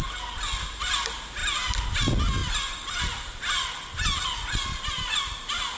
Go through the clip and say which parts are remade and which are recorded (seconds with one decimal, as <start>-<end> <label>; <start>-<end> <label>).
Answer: 0.0-2.4 recorded; 2.4-3.0 remade; 3.0-4.7 recorded; 4.7-5.8 remade